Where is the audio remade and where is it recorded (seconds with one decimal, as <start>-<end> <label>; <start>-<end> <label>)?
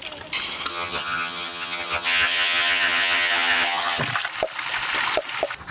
0.0-0.7 recorded; 0.7-4.0 remade; 4.0-5.7 recorded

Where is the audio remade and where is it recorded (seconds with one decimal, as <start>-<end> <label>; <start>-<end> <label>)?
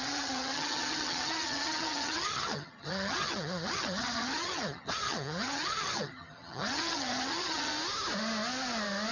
0.0-7.7 remade; 7.7-9.1 recorded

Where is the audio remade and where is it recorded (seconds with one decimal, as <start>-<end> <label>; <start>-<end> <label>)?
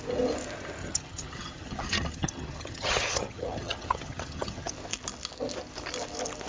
0.0-0.8 recorded; 0.8-4.7 remade; 4.7-6.5 recorded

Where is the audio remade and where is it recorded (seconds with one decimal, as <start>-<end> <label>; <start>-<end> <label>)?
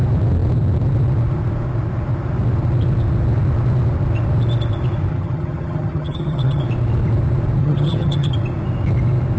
0.0-5.1 recorded; 5.1-6.6 remade; 6.6-7.6 recorded; 7.6-8.3 remade; 8.3-9.4 recorded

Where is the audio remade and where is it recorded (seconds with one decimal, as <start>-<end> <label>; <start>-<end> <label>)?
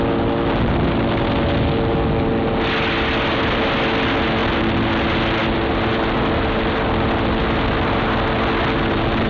0.0-9.3 recorded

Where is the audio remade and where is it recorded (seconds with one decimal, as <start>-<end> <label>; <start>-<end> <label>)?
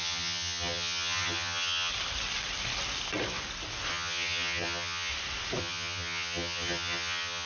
0.0-1.9 remade; 1.9-3.9 recorded; 3.9-5.1 remade; 5.1-5.6 recorded; 5.6-7.5 remade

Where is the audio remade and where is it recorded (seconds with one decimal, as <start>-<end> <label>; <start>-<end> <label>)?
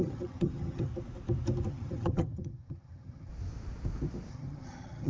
0.0-0.9 remade; 0.9-1.7 recorded; 1.7-3.3 remade; 3.3-4.3 recorded; 4.3-5.1 remade